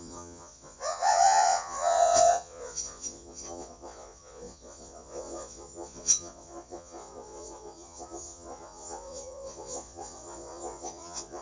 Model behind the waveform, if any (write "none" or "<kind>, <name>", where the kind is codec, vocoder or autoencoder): vocoder, Vocos